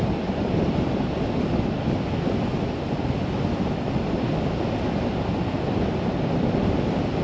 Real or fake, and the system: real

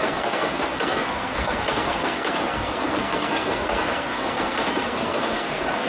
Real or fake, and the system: fake, codec, SNAC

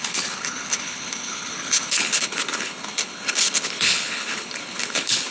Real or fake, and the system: fake, codec, HILCodec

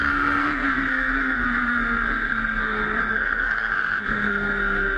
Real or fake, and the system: fake, codec, SNAC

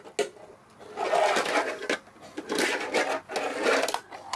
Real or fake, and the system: real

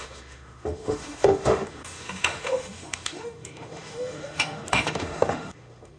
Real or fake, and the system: fake, autoencoder, DAC-VAE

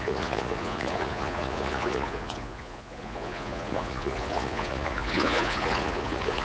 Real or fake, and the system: fake, vocoder, Vocos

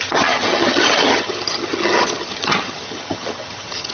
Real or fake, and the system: fake, vocoder, HiFi-GAN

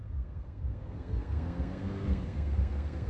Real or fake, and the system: fake, codec, SNAC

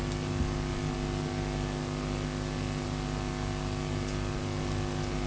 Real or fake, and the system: real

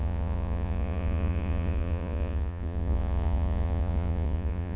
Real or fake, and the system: fake, vocoder, Vocos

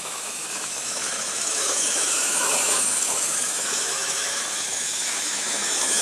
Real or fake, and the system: fake, autoencoder, DAC-VAE